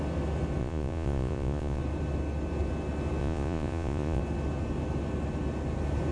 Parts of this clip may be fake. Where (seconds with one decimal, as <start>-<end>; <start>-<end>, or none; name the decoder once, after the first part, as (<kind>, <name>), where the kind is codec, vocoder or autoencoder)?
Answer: 0.6-1.8 (vocoder, Vocos); 3.2-4.2